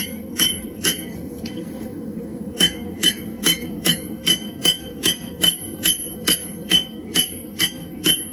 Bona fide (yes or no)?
no